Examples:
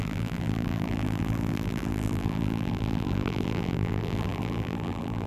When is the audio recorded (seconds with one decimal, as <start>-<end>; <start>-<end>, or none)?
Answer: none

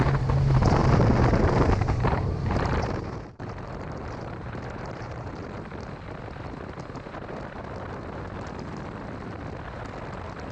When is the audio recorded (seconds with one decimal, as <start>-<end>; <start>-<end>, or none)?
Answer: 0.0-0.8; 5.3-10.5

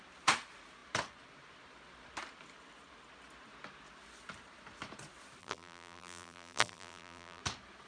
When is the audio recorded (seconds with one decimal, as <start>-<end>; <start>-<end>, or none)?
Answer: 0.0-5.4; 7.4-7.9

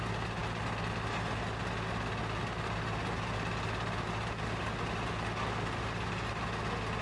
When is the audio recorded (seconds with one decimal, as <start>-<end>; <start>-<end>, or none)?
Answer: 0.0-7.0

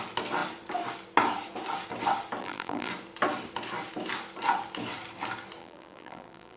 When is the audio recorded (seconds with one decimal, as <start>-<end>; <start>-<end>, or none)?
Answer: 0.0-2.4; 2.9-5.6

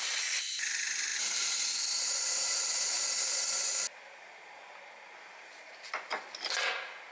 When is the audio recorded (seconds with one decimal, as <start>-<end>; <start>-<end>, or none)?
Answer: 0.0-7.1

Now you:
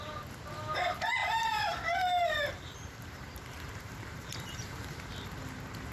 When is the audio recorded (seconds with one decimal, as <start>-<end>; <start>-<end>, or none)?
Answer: 0.0-1.2; 4.7-5.9